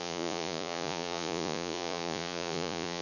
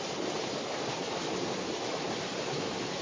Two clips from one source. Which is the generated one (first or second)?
first